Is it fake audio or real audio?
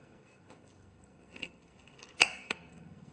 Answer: fake